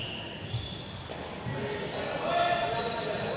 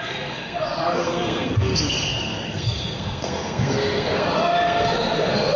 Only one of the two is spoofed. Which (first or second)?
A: second